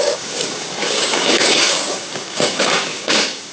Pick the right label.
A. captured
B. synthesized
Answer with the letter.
B